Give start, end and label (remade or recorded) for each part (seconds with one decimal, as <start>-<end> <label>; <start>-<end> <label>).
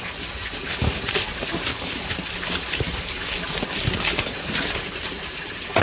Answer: 0.0-5.8 recorded